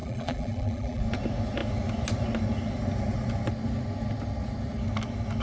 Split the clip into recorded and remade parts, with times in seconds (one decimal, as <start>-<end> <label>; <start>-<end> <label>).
0.0-1.0 remade; 1.0-5.4 recorded